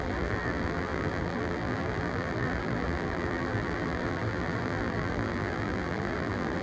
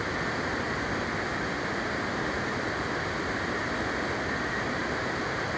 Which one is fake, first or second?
first